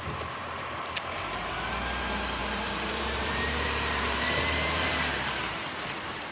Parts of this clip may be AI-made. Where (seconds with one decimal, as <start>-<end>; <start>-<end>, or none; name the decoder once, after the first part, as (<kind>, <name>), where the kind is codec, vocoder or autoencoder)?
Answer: 2.4-5.4 (vocoder, BigVGAN v2)